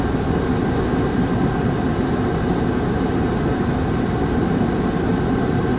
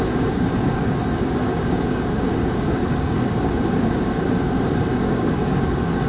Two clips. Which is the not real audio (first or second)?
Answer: second